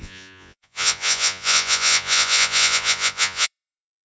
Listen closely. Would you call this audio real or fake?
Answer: fake